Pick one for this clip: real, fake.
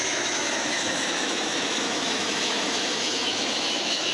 fake